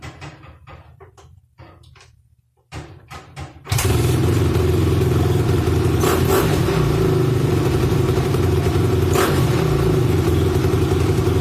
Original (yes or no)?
no